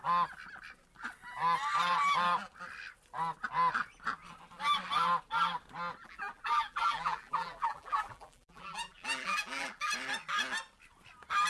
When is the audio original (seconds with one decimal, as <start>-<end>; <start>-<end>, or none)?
0.0-6.0; 9.9-11.5